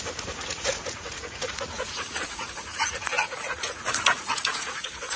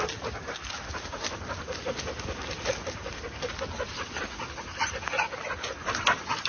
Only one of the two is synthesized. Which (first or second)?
first